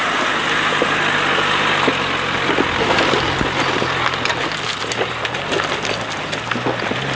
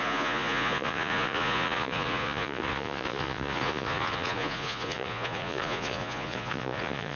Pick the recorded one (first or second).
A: first